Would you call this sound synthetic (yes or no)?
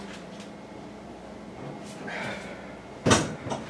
no